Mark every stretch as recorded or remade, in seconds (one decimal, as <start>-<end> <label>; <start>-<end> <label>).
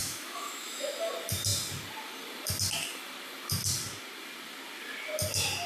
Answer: 0.0-1.1 remade; 1.1-5.7 recorded